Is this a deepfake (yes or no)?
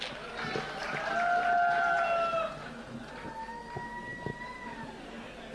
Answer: no